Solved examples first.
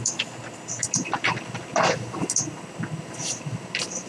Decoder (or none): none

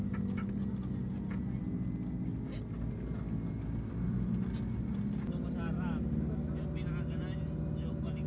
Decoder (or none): none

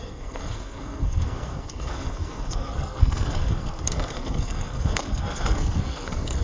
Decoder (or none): codec, SNAC